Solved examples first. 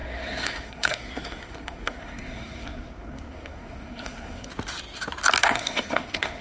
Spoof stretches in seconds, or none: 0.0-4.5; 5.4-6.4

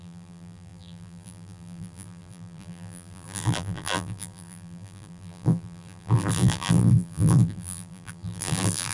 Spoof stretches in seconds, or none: 0.0-8.9